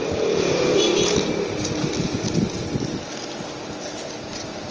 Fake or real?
real